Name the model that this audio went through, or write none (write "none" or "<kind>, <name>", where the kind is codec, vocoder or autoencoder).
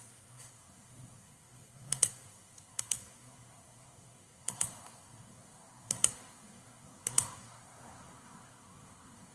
codec, SNAC